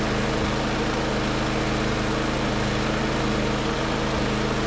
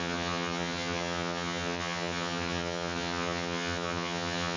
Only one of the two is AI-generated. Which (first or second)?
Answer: second